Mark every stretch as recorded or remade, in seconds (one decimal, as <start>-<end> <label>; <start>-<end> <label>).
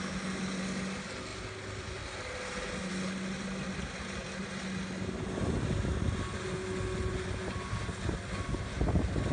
0.0-9.3 recorded